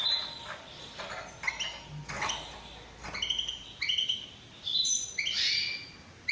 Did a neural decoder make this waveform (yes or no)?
no